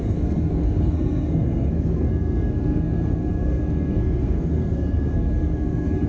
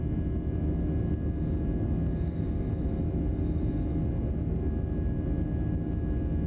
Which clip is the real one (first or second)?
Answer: second